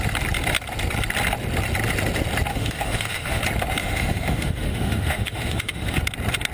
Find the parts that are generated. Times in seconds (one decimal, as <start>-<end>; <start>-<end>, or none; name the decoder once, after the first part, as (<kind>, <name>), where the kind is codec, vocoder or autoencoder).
2.5-3.4 (autoencoder, DAC-VAE); 3.8-6.0